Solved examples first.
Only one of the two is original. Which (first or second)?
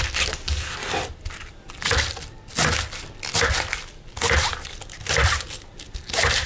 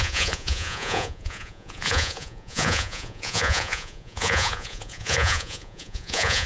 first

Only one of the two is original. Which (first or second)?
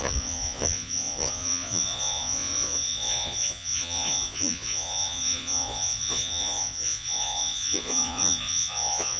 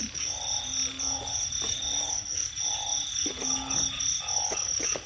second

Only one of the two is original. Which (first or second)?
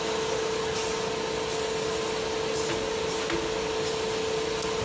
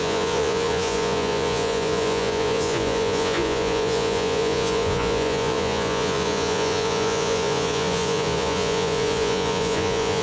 first